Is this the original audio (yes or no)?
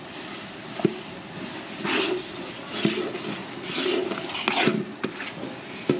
yes